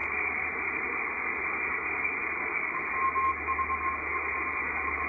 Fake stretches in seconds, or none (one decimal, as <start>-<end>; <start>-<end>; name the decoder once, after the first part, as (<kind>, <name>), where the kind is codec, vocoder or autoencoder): 0.0-0.8 (vocoder, BigVGAN v2)